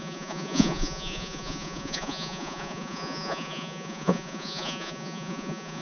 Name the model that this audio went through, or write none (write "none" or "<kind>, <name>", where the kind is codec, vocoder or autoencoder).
vocoder, Vocos